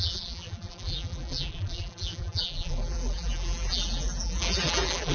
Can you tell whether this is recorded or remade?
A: remade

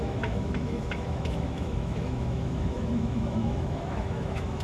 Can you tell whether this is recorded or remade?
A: remade